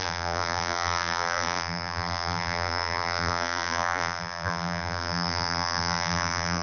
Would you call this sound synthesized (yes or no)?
yes